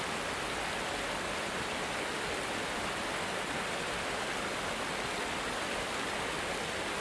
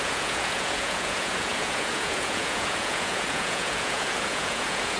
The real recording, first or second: first